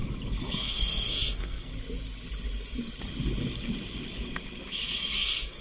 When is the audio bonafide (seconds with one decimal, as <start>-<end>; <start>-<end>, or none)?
0.0-0.6; 1.7-5.1